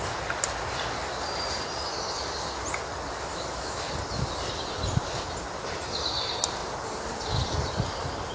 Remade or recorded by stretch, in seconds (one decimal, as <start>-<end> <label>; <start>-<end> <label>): 0.0-3.3 recorded; 3.3-3.9 remade; 3.9-8.3 recorded